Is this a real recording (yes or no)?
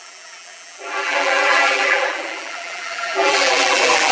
no